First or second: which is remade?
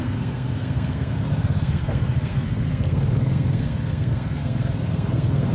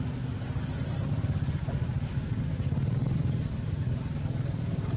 first